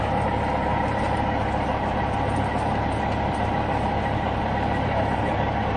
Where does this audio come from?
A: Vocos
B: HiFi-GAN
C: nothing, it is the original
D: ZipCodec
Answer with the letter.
C